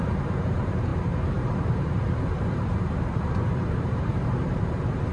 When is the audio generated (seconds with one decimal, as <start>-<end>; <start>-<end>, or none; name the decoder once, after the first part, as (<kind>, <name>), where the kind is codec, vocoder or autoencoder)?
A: 0.0-5.1 (vocoder, BigVGAN v2)